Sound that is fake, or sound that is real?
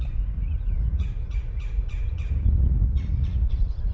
fake